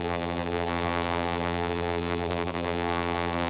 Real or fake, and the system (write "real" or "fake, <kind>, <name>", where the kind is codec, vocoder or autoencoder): fake, vocoder, BigVGAN v2